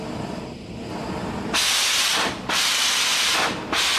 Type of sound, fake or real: real